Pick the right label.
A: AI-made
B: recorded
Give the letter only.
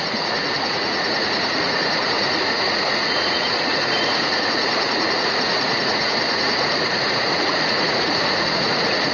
A